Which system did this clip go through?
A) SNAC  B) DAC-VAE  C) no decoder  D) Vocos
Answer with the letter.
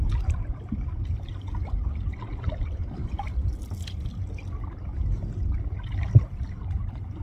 C